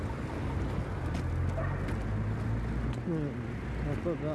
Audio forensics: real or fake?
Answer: real